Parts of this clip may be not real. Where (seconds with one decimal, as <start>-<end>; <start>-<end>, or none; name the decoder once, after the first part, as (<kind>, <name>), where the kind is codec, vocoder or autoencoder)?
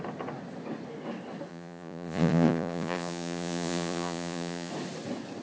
1.5-4.7 (vocoder, Vocos)